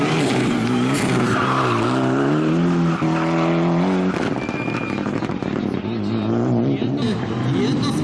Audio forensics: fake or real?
real